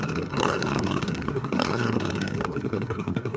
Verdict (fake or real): fake